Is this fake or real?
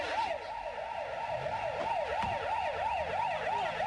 real